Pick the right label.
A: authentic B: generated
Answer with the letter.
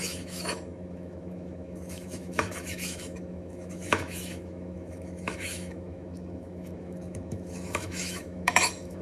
B